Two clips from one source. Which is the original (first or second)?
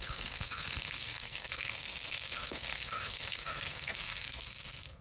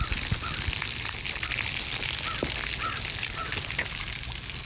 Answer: second